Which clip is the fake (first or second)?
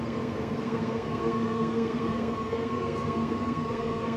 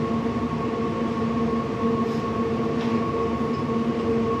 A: first